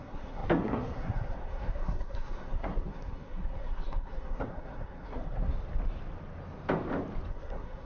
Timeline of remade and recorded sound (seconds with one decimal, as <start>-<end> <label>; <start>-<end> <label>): 0.0-5.5 remade; 5.5-7.3 recorded; 7.3-7.9 remade